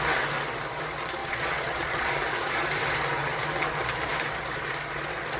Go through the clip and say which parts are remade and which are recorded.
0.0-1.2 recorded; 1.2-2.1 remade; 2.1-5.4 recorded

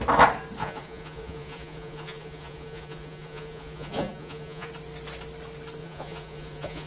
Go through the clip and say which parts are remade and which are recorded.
0.0-0.6 recorded; 0.6-4.7 remade; 4.7-5.8 recorded; 5.8-6.9 remade